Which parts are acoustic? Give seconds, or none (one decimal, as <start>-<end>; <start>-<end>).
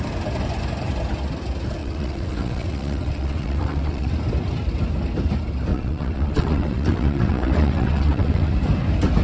0.0-1.8; 4.1-5.7; 8.5-9.2